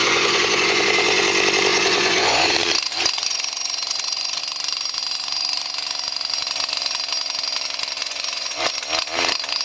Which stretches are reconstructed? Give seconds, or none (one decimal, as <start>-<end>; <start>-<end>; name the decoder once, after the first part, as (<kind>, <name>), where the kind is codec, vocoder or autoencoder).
0.0-1.2 (vocoder, Vocos); 1.7-4.4; 8.0-8.7